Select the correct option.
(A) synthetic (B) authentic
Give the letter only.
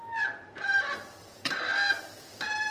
A